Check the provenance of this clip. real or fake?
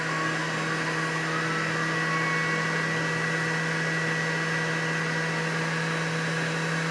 real